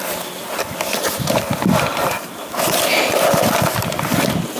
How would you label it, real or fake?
real